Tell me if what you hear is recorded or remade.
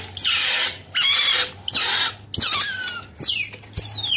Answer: recorded